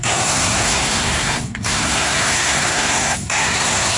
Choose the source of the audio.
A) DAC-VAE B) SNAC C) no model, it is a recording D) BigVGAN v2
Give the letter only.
B